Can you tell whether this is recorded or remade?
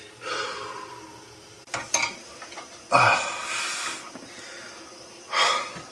recorded